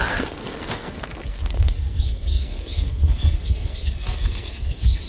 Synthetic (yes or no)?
yes